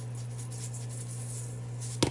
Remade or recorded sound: recorded